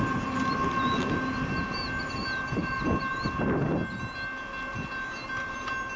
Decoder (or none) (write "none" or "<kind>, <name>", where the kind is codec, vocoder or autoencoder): none